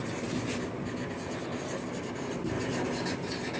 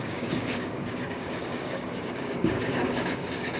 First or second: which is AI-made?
second